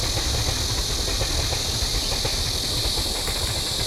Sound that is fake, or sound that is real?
real